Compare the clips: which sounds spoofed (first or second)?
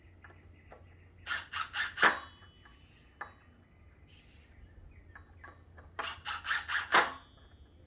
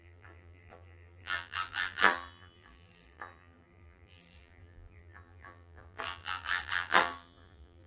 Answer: second